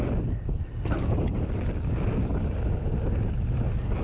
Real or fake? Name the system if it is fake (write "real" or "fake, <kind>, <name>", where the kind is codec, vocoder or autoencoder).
real